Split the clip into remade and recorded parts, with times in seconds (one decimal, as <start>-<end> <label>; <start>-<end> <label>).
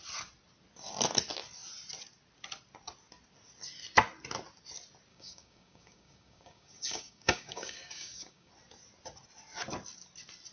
0.0-5.1 recorded; 5.1-8.5 remade; 8.5-10.5 recorded